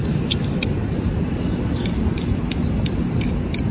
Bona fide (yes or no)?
yes